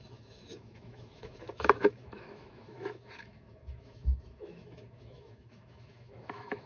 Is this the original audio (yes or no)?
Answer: no